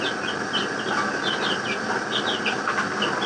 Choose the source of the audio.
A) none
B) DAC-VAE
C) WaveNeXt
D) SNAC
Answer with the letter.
A